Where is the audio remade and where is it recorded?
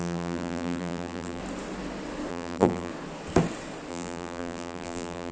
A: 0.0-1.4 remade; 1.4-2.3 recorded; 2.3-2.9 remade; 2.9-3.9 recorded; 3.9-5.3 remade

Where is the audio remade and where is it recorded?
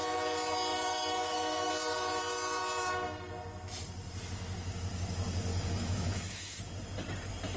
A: 0.0-0.7 recorded; 0.7-1.7 remade; 1.7-5.5 recorded; 5.5-6.6 remade; 6.6-7.6 recorded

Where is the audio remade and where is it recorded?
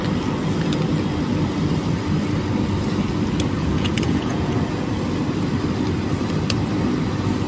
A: 0.0-3.6 recorded; 3.6-4.9 remade; 4.9-7.5 recorded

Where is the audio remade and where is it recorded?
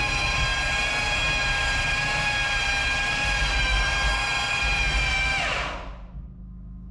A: 0.0-6.9 recorded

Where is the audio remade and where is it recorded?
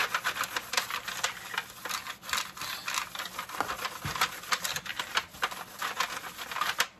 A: 0.0-7.0 recorded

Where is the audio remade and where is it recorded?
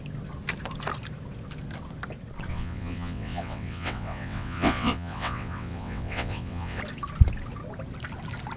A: 0.0-2.5 recorded; 2.5-6.8 remade; 6.8-8.6 recorded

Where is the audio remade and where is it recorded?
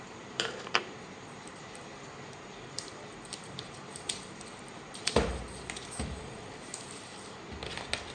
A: 0.0-7.1 remade; 7.1-8.1 recorded